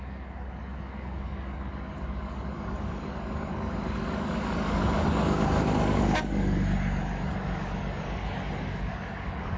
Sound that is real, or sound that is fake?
fake